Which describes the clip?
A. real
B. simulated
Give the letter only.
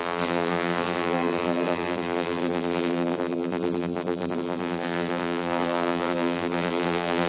B